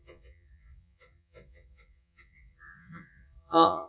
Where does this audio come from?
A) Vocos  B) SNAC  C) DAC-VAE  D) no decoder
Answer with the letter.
A